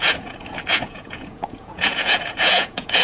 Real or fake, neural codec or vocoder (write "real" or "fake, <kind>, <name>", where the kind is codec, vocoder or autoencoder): fake, vocoder, Vocos